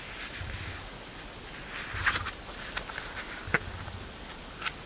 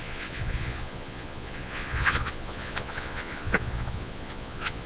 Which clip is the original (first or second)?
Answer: first